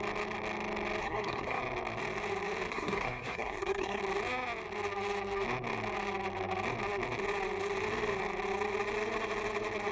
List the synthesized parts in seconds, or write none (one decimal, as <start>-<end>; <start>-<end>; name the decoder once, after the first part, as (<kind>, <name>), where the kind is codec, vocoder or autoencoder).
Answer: 1.0-1.6 (codec, SNAC); 2.7-4.0